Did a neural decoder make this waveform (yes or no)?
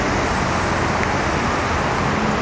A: no